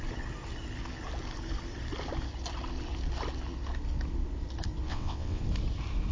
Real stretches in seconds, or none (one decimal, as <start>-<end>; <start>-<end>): 0.0-4.9; 5.4-6.1